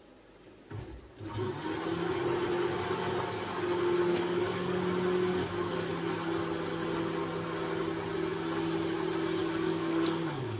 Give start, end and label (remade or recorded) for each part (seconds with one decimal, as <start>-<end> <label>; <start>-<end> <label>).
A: 0.0-4.1 recorded; 4.1-4.8 remade; 4.8-5.3 recorded; 5.3-5.9 remade; 5.9-9.4 recorded; 9.4-10.6 remade